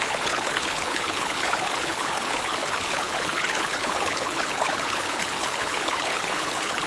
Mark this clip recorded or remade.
remade